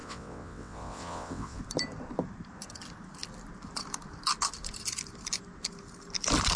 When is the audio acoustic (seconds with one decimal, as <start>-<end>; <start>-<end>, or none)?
1.6-6.6